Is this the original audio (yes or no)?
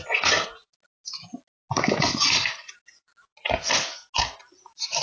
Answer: yes